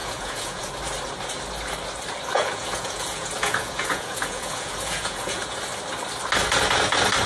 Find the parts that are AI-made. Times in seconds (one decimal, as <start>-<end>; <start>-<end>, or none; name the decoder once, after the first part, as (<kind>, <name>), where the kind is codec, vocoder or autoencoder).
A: 0.0-0.7 (vocoder, Vocos); 2.3-5.7